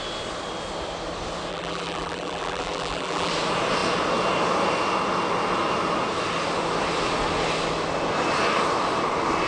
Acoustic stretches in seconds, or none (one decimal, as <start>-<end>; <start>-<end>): 0.0-1.5; 3.3-9.5